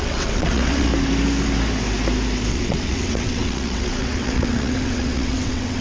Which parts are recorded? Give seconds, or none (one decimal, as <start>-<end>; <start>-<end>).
0.9-2.5